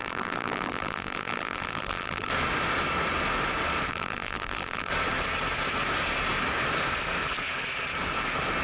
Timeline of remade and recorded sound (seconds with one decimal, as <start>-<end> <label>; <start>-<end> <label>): 0.0-2.3 remade; 2.3-3.9 recorded; 3.9-4.9 remade; 4.9-8.6 recorded